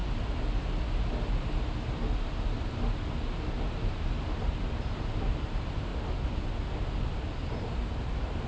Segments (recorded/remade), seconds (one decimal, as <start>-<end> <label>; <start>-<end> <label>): 0.0-3.5 recorded; 3.5-4.4 remade; 4.4-5.1 recorded; 5.1-5.9 remade; 5.9-8.1 recorded; 8.1-8.5 remade